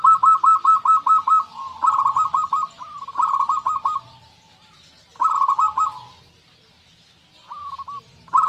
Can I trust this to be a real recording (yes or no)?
yes